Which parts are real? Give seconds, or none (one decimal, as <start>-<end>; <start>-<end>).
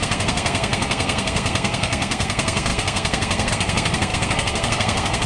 none